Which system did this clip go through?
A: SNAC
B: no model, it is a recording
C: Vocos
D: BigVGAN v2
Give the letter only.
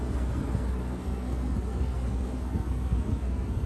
A